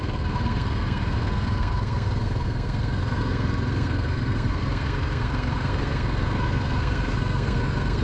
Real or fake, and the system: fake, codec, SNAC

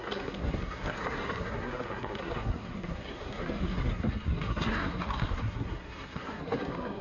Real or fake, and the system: fake, codec, SNAC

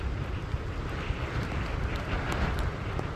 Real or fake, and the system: real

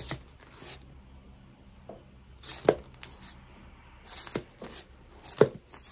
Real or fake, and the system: real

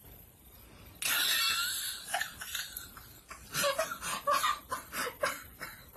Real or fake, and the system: real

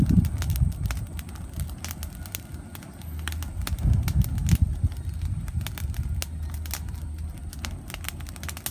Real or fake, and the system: real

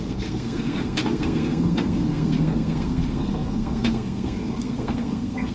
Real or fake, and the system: fake, codec, SNAC